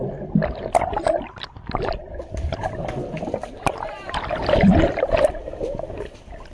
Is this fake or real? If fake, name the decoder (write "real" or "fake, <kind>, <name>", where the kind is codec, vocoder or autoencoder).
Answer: real